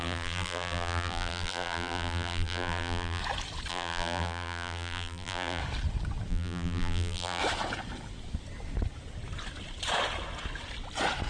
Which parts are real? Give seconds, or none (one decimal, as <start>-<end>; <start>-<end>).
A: 3.2-3.7; 5.6-6.3; 7.4-11.3